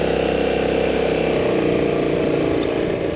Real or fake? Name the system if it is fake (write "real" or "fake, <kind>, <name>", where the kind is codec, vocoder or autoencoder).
real